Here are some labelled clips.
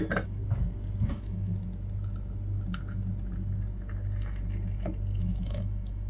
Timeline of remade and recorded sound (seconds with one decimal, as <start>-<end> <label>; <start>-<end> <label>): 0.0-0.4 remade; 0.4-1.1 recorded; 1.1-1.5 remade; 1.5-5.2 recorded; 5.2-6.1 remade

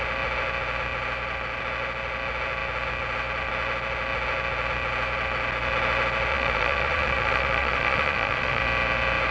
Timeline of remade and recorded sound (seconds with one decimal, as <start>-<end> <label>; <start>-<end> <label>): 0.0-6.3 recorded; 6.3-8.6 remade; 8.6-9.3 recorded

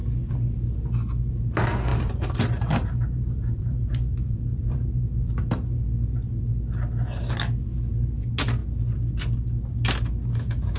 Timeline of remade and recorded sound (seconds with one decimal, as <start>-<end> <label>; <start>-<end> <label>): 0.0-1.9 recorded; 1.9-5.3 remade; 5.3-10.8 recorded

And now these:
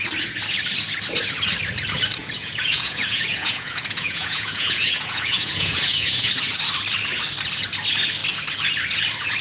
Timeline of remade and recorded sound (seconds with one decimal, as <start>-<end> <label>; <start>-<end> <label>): 0.0-2.2 recorded; 2.2-6.3 remade; 6.3-9.4 recorded